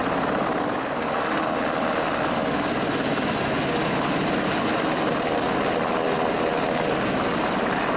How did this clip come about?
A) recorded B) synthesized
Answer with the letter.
A